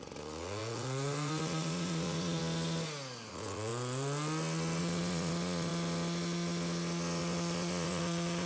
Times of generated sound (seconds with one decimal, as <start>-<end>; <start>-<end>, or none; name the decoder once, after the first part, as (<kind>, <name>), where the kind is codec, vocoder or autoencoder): 0.0-2.4 (vocoder, Vocos); 3.3-3.7; 4.8-5.7; 7.2-8.5